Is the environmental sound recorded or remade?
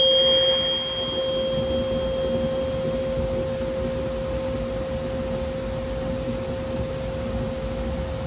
recorded